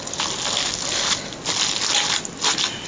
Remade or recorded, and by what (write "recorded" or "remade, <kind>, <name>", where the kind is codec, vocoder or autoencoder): recorded